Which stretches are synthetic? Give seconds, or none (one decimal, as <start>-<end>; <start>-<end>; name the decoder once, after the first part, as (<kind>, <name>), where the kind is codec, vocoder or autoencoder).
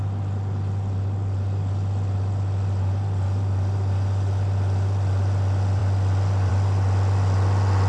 none